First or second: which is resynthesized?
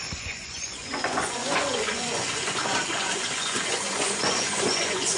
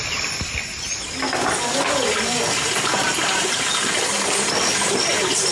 first